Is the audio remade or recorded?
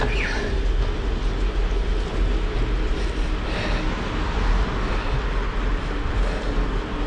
recorded